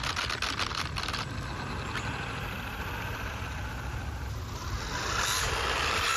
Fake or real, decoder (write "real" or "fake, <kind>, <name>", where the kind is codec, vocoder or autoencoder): real